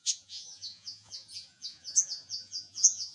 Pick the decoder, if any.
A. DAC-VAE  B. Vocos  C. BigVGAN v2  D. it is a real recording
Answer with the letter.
B